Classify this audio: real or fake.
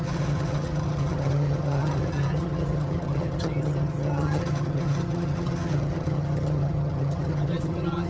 fake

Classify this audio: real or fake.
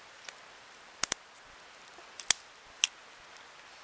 real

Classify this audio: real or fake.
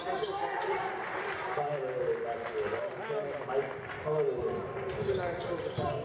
real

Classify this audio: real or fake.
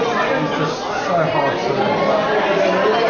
real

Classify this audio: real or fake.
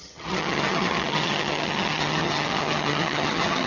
fake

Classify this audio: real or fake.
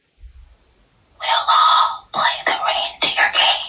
real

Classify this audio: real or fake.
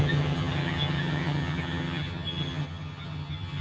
fake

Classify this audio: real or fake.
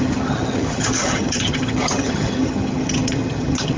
fake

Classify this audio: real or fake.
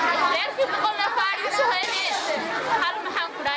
real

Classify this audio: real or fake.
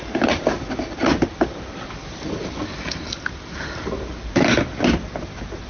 real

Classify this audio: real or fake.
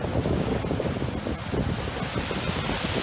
real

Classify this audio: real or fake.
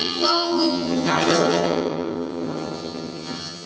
fake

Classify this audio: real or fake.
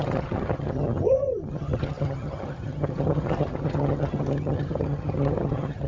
fake